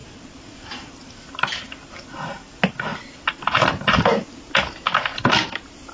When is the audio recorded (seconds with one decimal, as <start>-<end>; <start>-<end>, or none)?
0.0-5.9